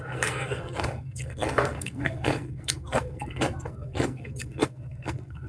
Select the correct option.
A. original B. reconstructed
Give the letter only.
B